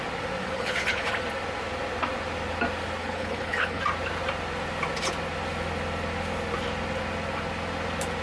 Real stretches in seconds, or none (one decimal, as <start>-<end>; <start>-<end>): 0.0-0.4; 1.1-3.0; 3.8-8.2